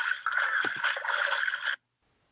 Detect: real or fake real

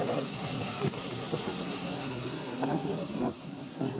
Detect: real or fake fake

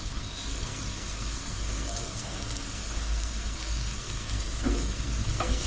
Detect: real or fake fake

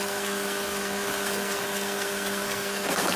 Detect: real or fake fake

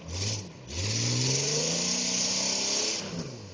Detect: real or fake real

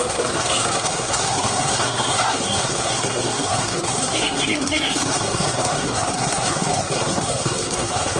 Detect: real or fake fake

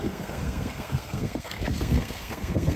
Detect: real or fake fake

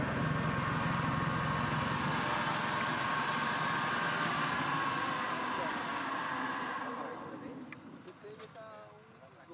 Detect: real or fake real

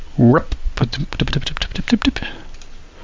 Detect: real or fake real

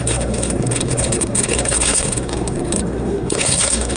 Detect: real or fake fake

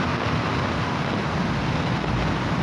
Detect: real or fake real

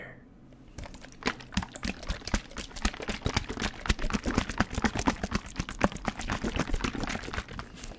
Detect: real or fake real